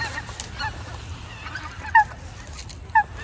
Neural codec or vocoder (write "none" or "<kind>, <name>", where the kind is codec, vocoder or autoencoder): none